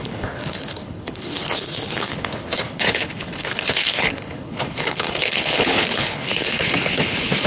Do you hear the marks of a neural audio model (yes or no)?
yes